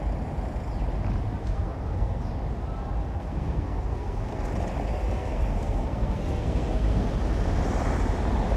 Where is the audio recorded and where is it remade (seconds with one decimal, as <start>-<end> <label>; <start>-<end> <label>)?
0.0-1.4 recorded; 1.4-2.3 remade; 2.3-3.1 recorded; 3.1-4.5 remade; 4.5-4.9 recorded; 4.9-7.1 remade; 7.1-8.6 recorded